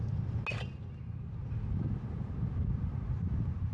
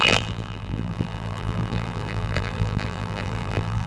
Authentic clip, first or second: first